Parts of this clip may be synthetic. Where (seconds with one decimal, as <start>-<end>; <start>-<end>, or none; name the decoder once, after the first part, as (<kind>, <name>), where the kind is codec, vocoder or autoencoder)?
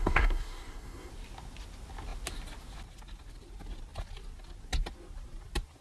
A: 0.0-1.1 (codec, SNAC)